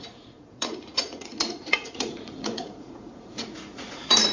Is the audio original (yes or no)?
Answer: no